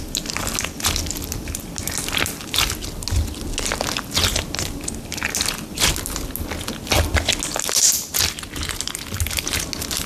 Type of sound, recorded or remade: recorded